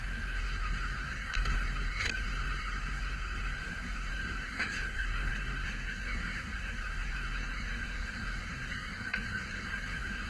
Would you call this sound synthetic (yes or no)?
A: yes